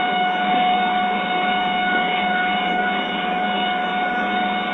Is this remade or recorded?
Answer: remade